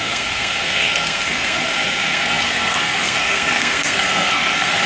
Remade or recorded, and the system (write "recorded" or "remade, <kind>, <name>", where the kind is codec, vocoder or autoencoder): remade, codec, SNAC